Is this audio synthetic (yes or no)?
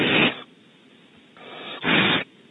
no